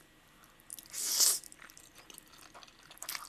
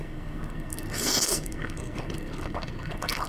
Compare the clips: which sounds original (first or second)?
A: first